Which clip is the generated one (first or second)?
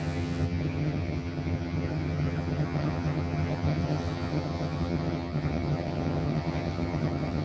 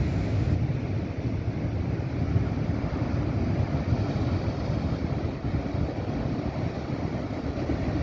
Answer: first